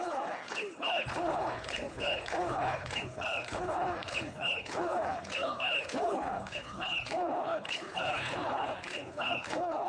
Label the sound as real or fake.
fake